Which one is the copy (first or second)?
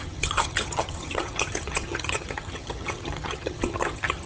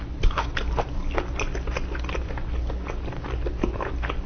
first